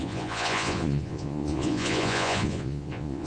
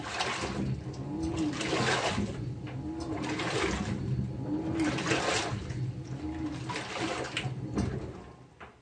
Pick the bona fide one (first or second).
second